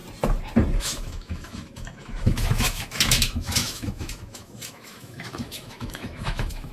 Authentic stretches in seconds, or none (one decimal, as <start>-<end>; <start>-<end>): 0.0-0.8